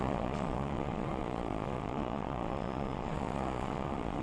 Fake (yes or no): yes